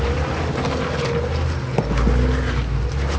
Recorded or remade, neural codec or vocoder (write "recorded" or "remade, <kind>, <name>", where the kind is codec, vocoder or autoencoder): recorded